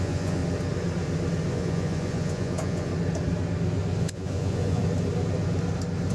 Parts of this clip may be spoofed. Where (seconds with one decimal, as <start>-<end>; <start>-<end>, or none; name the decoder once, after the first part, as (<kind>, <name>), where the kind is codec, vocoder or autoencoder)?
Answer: 0.0-0.4 (vocoder, Vocos); 1.5-2.9; 4.0-4.8